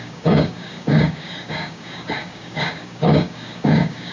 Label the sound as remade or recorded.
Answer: remade